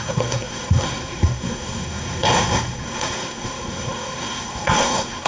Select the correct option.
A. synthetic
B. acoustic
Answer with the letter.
A